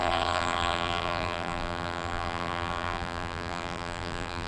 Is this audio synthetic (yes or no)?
yes